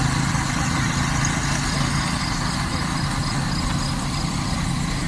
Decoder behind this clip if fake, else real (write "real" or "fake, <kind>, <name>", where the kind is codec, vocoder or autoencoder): real